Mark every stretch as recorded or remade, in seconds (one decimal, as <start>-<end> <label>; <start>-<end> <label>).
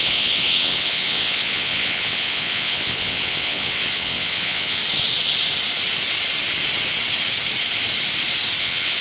0.0-4.8 remade; 4.8-8.6 recorded; 8.6-9.0 remade